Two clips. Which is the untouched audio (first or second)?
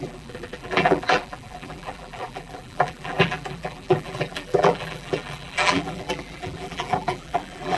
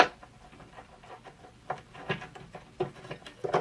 second